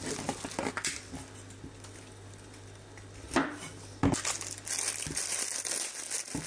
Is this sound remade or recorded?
recorded